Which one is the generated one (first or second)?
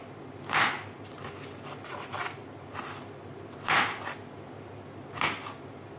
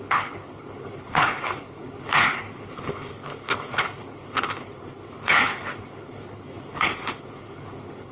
second